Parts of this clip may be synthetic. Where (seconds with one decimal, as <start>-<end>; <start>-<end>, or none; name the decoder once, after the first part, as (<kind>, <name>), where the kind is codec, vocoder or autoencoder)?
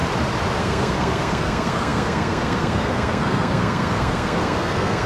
0.6-5.1 (codec, SNAC)